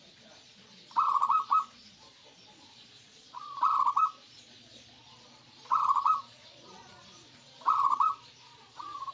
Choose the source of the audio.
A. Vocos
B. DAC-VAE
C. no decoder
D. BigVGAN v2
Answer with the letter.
A